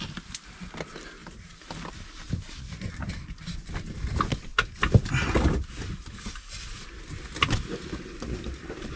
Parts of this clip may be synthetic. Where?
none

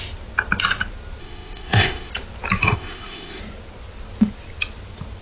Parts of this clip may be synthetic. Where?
1.2-2.1 (autoencoder, DAC-VAE); 2.6-3.4

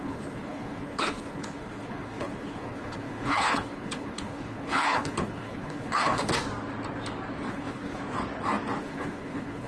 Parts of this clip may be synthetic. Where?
0.0-6.3 (codec, HILCodec); 7.5-8.0; 8.8-9.7

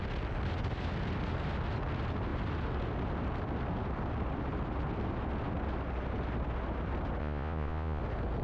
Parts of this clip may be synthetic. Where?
7.2-8.0 (vocoder, Vocos)